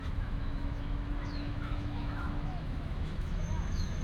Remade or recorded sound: remade